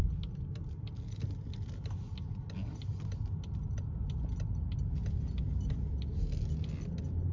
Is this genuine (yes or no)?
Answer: yes